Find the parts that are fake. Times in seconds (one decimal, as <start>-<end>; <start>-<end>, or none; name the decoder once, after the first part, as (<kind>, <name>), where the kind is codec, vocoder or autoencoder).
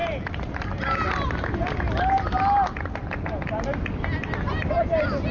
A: 0.0-0.8 (vocoder, BigVGAN v2)